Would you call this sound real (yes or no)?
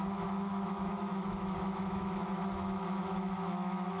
no